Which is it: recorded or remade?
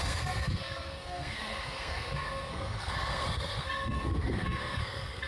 remade